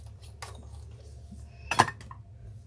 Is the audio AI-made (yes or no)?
no